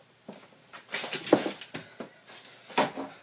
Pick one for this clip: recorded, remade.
recorded